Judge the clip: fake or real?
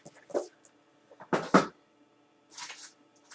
real